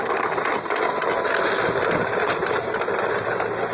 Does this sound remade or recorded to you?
recorded